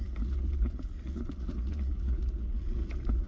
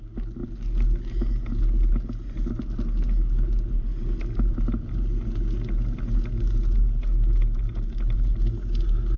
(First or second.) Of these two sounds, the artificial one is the first